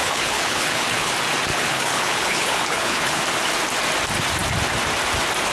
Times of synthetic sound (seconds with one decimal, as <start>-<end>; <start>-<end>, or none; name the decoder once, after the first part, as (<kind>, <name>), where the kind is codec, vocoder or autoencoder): 0.0-1.1 (codec, HILCodec); 1.5-3.2